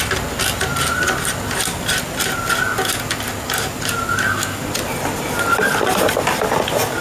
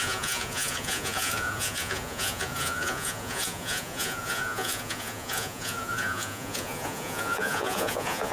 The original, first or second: first